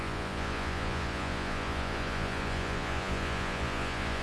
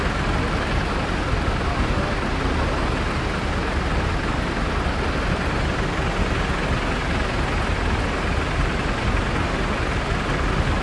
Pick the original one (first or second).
second